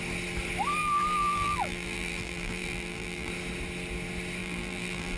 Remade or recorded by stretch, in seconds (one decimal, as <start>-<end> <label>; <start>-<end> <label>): 0.0-0.8 recorded; 0.8-3.3 remade; 3.3-4.4 recorded; 4.4-5.2 remade